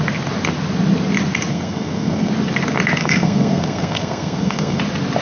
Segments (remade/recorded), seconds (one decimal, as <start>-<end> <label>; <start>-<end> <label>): 0.0-1.5 recorded; 1.5-2.3 remade; 2.3-3.0 recorded; 3.0-4.8 remade; 4.8-5.2 recorded